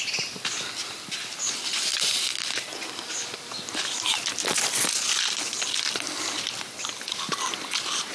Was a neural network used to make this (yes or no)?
no